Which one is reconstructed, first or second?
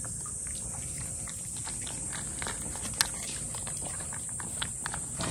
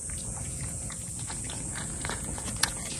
second